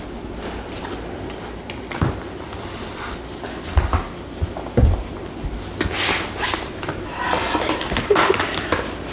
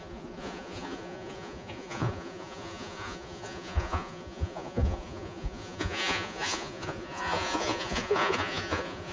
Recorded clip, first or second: first